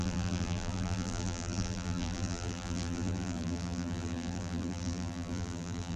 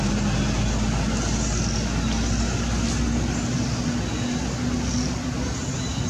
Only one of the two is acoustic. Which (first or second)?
second